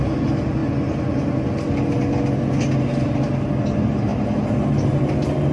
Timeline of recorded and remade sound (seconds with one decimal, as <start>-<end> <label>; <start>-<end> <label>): 0.0-5.5 recorded